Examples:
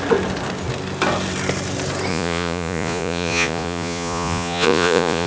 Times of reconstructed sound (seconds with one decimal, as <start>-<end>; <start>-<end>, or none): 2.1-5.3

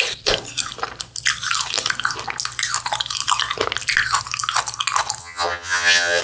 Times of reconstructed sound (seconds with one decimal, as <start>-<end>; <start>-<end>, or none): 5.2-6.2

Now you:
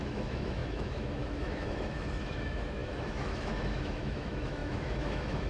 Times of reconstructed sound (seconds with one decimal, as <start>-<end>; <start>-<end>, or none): 0.0-5.5